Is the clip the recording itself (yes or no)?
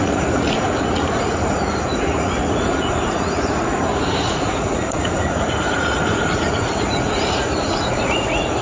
no